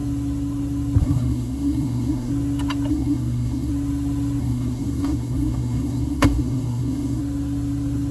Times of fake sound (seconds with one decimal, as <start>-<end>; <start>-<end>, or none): 1.0-2.3; 2.9-3.7; 4.4-7.2